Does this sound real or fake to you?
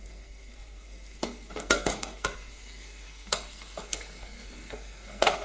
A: fake